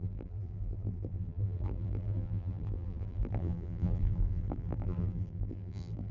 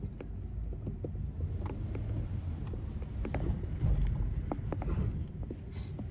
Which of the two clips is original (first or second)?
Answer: second